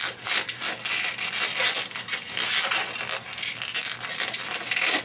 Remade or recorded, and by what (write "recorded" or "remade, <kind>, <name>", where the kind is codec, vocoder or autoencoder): recorded